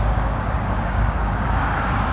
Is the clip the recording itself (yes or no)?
no